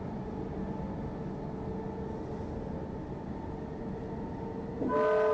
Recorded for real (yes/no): yes